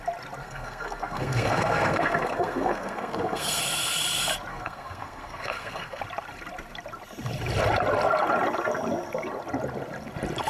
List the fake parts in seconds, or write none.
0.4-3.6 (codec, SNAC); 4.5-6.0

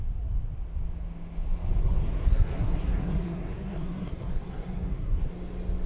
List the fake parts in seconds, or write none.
1.8-5.3 (codec, SNAC)

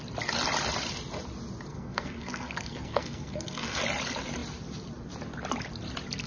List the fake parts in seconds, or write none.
1.7-3.8 (codec, SNAC)

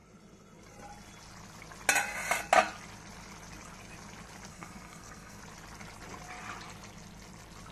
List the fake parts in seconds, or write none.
4.5-5.4 (codec, SNAC)